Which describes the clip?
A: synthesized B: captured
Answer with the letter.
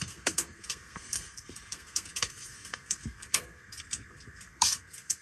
A